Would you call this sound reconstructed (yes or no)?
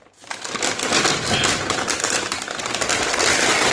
no